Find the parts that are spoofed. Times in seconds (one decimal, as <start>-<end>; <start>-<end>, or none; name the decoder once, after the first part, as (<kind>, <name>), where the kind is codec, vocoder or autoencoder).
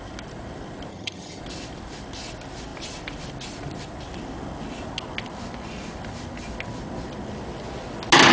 0.9-1.4 (vocoder, HiFi-GAN)